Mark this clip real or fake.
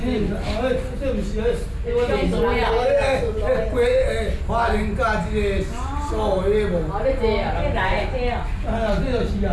real